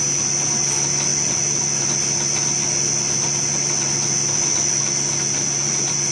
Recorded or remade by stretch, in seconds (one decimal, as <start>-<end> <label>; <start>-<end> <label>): 0.0-6.1 recorded